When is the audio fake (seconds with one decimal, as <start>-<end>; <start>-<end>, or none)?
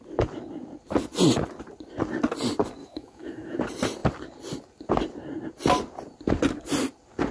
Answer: 2.8-3.6